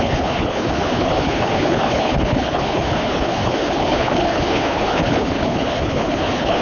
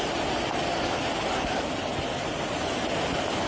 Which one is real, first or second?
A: second